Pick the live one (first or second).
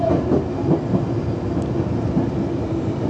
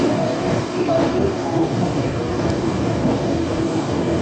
first